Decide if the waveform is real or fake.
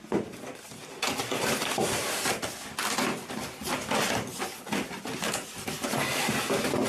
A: real